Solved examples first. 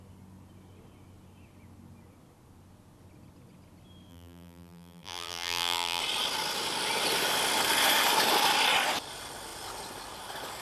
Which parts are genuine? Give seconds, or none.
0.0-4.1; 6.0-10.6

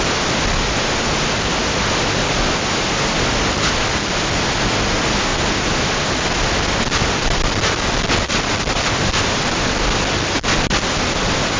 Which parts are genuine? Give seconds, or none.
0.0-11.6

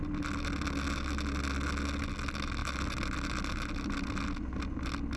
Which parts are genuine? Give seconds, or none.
0.0-5.2

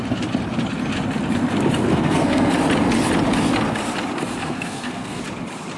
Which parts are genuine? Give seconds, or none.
0.0-1.9; 2.5-4.4; 5.2-5.8

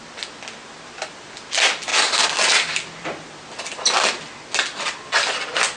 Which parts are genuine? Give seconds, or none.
0.0-5.8

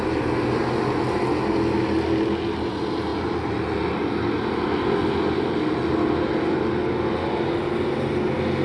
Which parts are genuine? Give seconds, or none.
0.0-8.6